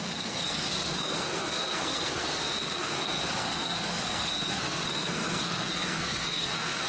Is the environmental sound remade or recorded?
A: remade